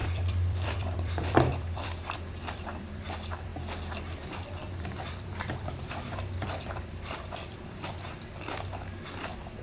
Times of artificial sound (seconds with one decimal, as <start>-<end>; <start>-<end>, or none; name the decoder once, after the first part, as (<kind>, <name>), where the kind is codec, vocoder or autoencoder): 0.0-3.5 (vocoder, BigVGAN v2); 5.0-8.7